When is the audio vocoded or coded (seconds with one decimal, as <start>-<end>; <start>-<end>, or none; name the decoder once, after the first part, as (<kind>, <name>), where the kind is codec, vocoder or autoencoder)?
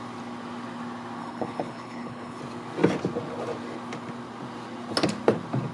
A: 1.2-2.4 (codec, HILCodec)